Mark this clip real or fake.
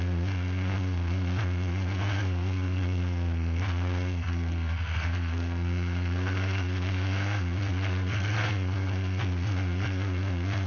fake